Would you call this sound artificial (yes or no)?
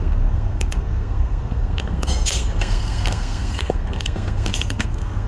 yes